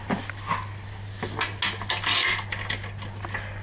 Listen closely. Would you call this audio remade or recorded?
recorded